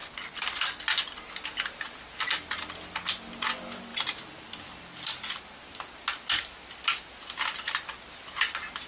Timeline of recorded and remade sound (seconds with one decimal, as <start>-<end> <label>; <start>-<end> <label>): 0.0-8.9 recorded